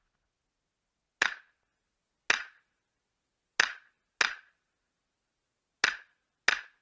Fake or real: real